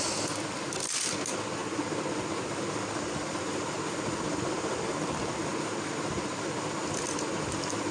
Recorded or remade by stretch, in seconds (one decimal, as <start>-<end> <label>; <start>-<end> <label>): 0.0-7.9 recorded